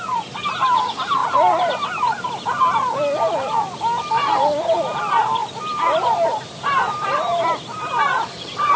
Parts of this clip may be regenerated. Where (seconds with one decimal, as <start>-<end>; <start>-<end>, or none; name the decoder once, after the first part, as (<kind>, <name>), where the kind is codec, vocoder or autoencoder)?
none